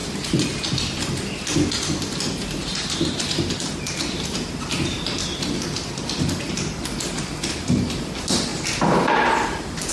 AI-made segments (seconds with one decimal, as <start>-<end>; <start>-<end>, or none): none